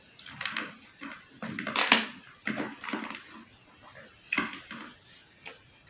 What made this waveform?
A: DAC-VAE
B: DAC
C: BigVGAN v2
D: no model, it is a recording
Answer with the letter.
D